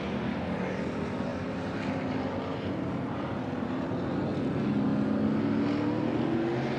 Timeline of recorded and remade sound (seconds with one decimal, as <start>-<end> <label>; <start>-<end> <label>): 0.0-1.3 recorded; 1.3-4.1 remade; 4.1-6.8 recorded